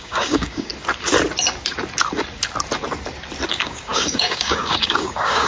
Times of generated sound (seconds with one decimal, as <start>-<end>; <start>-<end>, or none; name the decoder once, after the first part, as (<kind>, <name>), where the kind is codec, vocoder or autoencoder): 0.0-0.7 (codec, DAC); 3.5-5.5